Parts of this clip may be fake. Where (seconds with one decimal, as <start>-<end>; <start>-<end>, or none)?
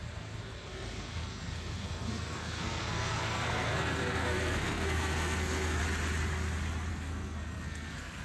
0.0-5.8; 6.9-8.2